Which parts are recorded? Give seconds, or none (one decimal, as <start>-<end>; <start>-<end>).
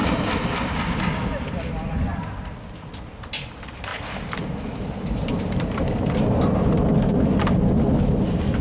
0.0-3.9; 6.2-8.6